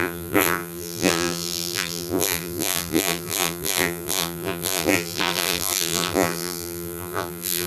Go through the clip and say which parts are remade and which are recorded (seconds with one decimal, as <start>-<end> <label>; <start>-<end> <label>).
0.0-7.7 remade